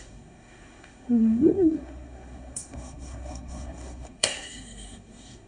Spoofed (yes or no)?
yes